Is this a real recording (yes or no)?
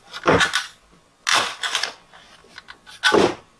yes